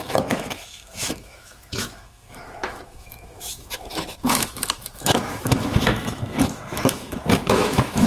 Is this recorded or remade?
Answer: remade